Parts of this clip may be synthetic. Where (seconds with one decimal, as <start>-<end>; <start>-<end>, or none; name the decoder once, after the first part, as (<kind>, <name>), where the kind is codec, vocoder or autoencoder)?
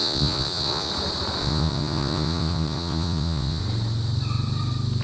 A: 0.0-0.9 (vocoder, Vocos); 1.4-3.6